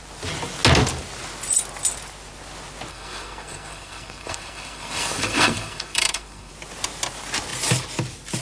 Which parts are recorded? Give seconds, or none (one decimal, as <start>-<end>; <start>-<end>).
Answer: 0.0-2.9; 6.5-8.4